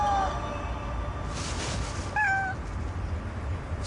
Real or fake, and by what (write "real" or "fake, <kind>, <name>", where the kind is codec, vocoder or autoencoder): real